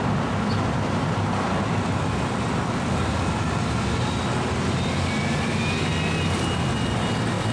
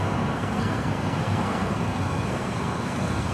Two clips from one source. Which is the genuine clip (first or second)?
first